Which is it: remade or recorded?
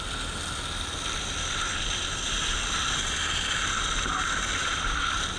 remade